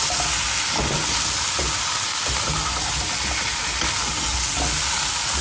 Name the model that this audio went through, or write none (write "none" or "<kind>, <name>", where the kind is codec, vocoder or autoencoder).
none